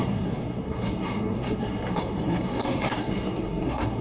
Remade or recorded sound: remade